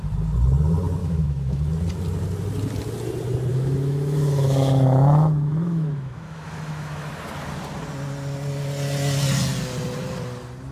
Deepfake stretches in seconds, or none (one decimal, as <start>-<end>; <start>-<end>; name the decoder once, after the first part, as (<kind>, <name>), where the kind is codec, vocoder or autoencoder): 1.0-1.6 (autoencoder, DAC-VAE); 3.5-7.1